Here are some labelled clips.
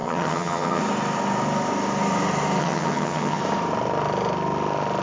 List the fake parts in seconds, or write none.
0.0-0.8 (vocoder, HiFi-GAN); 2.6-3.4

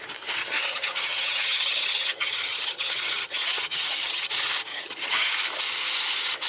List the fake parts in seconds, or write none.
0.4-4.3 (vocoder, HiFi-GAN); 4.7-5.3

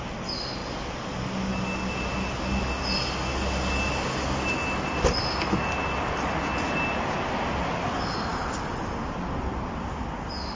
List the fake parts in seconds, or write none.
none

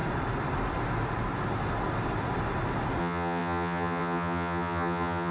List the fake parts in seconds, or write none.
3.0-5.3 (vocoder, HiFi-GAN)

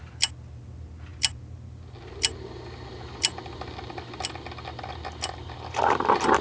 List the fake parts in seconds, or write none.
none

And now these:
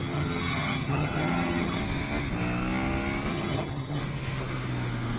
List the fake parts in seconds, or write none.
0.0-1.8 (vocoder, HiFi-GAN); 3.3-4.0

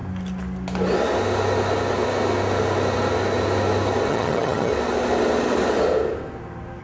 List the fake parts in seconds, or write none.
4.1-4.7 (vocoder, HiFi-GAN)